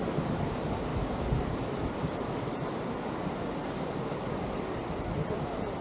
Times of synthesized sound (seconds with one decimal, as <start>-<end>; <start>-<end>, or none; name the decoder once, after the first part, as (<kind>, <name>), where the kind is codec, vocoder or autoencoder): 3.6-4.2 (codec, DAC)